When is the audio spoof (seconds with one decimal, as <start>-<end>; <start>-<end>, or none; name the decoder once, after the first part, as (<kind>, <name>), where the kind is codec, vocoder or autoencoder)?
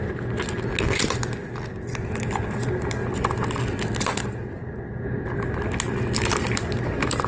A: none